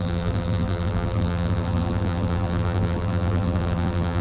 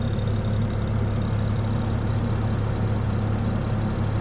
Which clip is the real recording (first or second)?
second